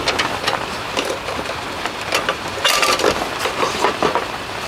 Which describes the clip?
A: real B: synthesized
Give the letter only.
A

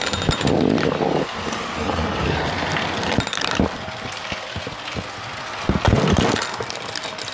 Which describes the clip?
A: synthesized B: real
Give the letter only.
B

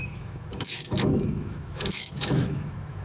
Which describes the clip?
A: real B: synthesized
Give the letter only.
B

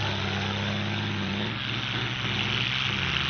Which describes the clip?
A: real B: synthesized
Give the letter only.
A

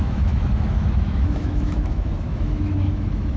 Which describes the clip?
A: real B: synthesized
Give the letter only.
B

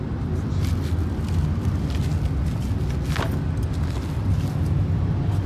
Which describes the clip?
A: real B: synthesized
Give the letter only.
A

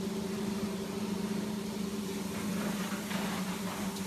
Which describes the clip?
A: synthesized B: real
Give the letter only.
B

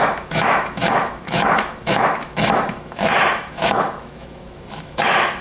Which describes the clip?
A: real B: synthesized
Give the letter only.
B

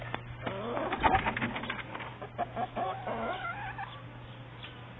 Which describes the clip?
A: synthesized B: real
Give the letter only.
B